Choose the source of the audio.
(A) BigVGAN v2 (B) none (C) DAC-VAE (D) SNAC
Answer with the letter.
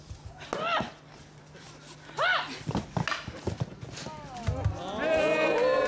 B